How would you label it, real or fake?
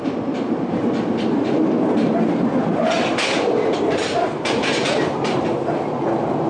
real